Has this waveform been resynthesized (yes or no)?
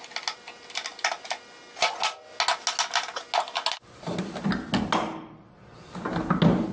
no